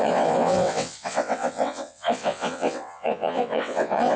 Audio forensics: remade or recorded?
remade